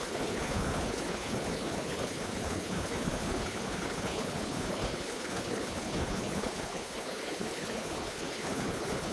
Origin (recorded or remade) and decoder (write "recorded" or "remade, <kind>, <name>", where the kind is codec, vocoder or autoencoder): remade, codec, HILCodec